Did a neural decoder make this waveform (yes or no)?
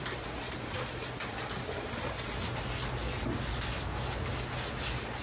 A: no